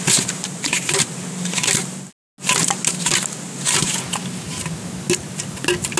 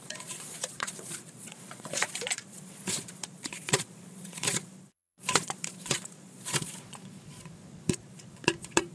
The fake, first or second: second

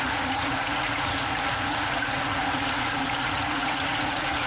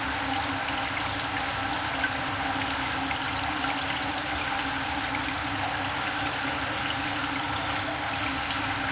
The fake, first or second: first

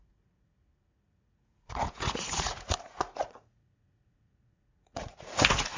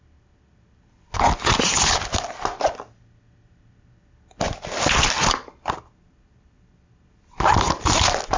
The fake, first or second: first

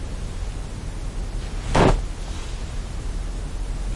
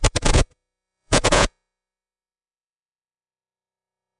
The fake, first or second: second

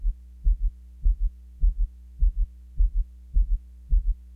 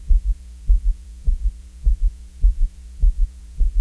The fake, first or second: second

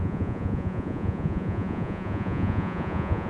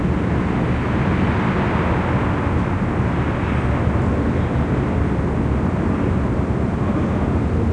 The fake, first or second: first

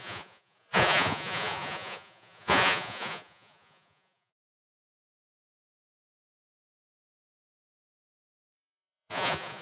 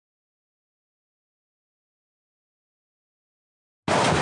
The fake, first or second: first